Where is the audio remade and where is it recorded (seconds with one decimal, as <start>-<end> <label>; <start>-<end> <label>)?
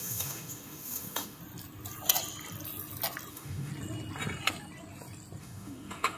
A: 0.0-1.4 remade; 1.4-3.3 recorded; 3.3-3.7 remade; 3.7-5.4 recorded; 5.4-6.2 remade